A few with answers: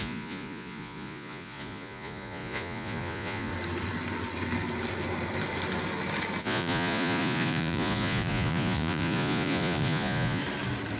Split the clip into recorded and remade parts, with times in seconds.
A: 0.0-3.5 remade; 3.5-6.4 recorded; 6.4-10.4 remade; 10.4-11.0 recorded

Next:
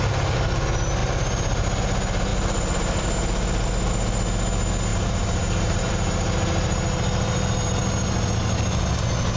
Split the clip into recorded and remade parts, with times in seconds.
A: 0.0-1.0 recorded; 1.0-1.6 remade; 1.6-2.3 recorded; 2.3-3.0 remade; 3.0-4.9 recorded; 4.9-5.9 remade; 5.9-9.4 recorded

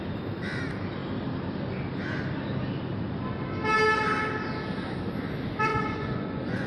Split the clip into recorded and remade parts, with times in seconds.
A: 0.0-5.7 recorded; 5.7-6.7 remade